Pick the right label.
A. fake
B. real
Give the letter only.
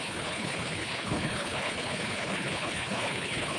A